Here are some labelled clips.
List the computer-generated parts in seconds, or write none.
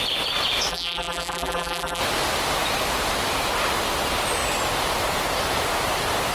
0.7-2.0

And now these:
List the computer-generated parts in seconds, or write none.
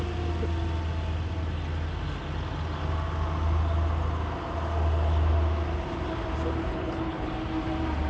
6.7-7.3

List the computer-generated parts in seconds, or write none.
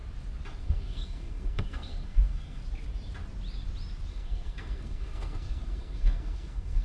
0.6-2.6; 4.1-6.8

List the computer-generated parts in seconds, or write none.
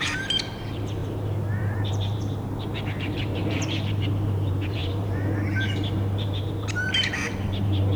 0.0-8.0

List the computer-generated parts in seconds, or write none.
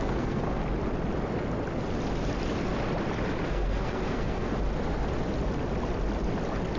0.0-0.6; 3.5-4.5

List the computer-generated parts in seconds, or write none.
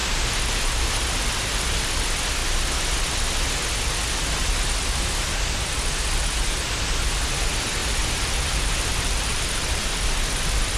7.8-10.1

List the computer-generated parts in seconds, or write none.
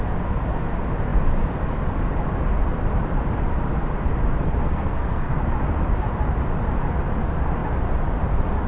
4.4-5.4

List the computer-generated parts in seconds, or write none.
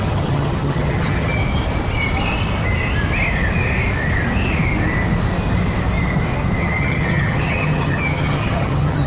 0.0-1.4; 6.6-9.1